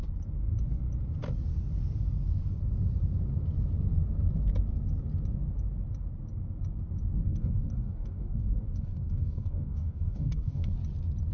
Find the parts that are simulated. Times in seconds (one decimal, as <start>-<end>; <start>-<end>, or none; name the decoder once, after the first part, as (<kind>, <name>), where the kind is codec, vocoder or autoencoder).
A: 7.3-10.7 (codec, DAC)